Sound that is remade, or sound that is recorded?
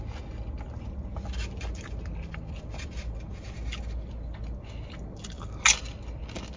recorded